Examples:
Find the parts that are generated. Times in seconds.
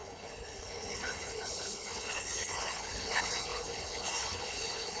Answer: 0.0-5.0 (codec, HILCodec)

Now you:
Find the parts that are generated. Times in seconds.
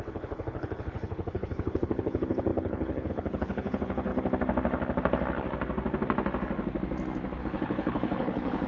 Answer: 0.0-4.1 (codec, HILCodec); 7.4-8.7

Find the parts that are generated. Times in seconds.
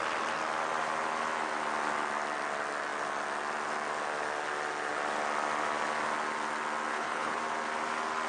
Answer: 6.9-7.4 (codec, HILCodec)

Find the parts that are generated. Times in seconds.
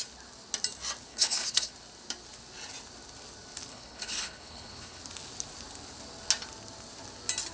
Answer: 1.1-1.7 (codec, HILCodec); 3.7-5.0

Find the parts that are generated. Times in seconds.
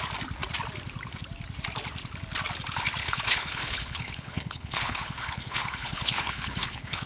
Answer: 3.0-7.1 (codec, HILCodec)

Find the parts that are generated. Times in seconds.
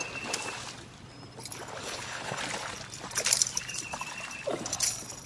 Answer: 1.8-2.4 (codec, HILCodec)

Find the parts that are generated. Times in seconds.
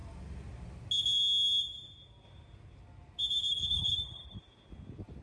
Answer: 3.5-4.4 (codec, HILCodec)